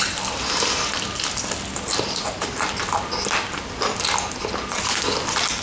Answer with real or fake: real